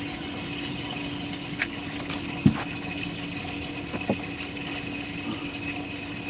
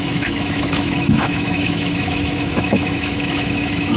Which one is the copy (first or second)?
second